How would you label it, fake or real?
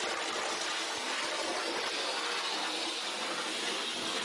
real